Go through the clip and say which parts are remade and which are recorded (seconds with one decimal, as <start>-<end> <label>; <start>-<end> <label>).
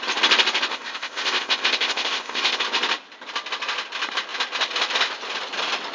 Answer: 0.0-0.7 recorded; 0.7-2.6 remade; 2.6-5.9 recorded